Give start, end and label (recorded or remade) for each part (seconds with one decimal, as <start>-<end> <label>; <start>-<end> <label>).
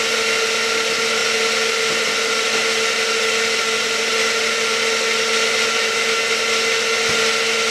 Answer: 0.0-7.7 recorded